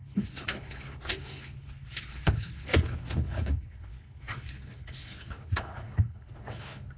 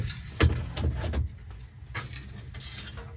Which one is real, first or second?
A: second